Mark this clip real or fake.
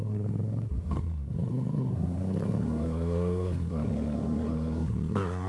fake